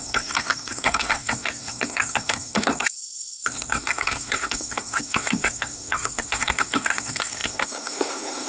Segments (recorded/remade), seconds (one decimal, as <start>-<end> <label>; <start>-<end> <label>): 0.0-8.5 remade